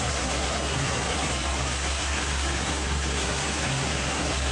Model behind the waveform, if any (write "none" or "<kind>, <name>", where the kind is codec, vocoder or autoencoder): codec, SNAC